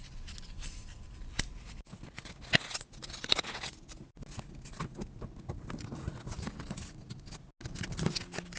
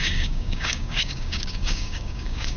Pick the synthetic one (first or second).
second